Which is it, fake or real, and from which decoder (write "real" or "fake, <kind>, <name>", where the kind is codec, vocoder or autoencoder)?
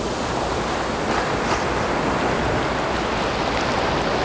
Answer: real